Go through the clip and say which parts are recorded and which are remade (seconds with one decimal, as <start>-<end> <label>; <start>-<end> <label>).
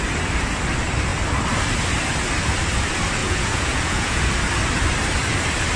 0.0-3.2 recorded; 3.2-4.3 remade; 4.3-5.8 recorded